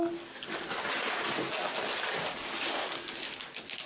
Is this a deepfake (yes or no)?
no